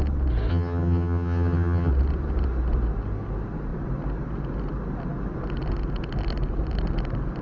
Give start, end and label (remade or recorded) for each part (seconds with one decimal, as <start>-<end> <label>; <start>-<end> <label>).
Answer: 0.0-0.5 recorded; 0.5-1.9 remade; 1.9-7.4 recorded